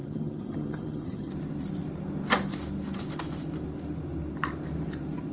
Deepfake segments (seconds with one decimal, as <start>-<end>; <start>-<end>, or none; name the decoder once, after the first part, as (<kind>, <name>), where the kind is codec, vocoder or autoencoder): 0.0-1.3 (vocoder, HiFi-GAN)